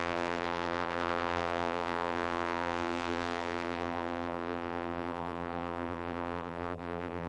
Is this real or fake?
fake